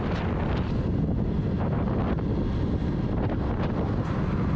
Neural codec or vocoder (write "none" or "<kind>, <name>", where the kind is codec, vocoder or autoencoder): none